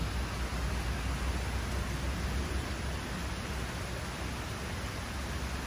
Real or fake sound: real